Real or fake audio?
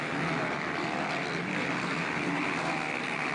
real